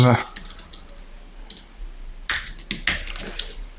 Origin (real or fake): real